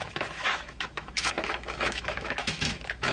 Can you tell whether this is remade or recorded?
remade